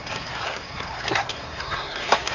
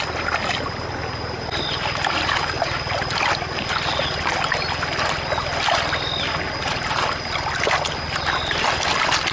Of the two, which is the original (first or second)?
second